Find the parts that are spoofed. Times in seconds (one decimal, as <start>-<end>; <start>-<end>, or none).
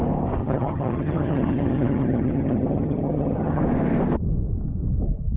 0.4-3.6